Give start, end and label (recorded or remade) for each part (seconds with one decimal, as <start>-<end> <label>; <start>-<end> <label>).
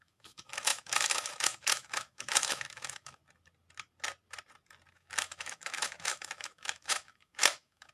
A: 0.0-3.2 remade; 3.2-4.9 recorded; 4.9-7.9 remade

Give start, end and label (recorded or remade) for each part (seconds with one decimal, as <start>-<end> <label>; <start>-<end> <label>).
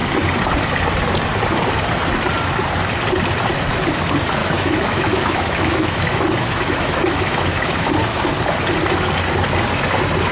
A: 0.0-4.4 recorded; 4.4-7.9 remade; 7.9-10.3 recorded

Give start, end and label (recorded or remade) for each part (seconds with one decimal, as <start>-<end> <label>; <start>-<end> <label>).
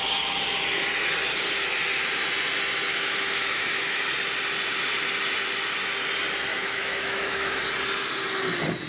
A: 0.0-2.9 recorded; 2.9-4.0 remade; 4.0-6.5 recorded; 6.5-7.6 remade; 7.6-8.9 recorded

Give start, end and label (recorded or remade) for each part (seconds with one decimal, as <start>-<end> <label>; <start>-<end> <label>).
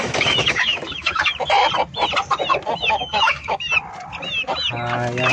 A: 0.0-1.3 remade; 1.3-2.8 recorded; 2.8-3.7 remade; 3.7-5.3 recorded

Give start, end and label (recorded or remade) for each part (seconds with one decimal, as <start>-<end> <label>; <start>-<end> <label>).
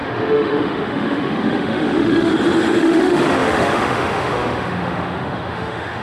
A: 0.0-2.3 remade; 2.3-2.8 recorded; 2.8-6.0 remade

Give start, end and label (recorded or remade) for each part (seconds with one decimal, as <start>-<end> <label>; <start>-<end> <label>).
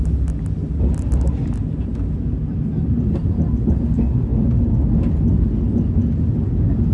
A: 0.0-6.9 recorded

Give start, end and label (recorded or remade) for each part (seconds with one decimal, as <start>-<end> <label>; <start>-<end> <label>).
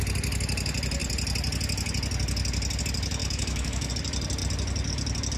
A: 0.0-3.2 recorded; 3.2-3.9 remade; 3.9-5.4 recorded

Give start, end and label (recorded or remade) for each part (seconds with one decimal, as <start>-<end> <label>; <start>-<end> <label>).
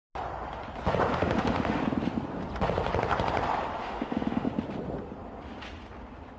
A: 0.0-1.1 recorded; 1.1-1.8 remade; 1.8-3.8 recorded; 3.8-4.5 remade; 4.5-6.4 recorded